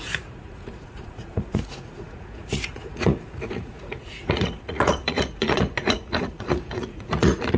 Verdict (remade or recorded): remade